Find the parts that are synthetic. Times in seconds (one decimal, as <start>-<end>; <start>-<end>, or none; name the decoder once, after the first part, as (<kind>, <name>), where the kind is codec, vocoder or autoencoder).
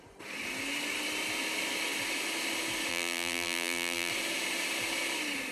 2.9-4.1 (vocoder, BigVGAN v2)